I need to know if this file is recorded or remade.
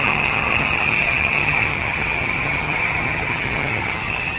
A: remade